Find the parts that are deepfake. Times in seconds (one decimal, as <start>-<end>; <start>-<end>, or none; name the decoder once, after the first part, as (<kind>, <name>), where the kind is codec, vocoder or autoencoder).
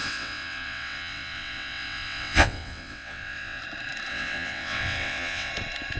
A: 0.0-3.6 (vocoder, WaveNeXt); 4.1-5.5